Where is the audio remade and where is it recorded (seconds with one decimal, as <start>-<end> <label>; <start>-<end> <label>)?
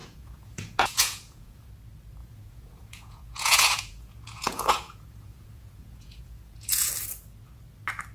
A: 0.0-1.7 remade; 1.7-2.2 recorded; 2.2-6.9 remade; 6.9-8.1 recorded